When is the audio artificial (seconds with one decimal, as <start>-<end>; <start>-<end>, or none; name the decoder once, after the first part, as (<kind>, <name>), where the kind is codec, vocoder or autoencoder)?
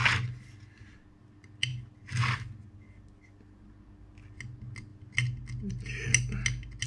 none